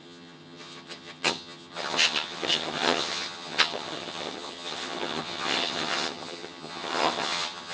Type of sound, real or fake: fake